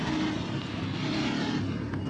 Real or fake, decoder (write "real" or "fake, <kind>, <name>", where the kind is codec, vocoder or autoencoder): real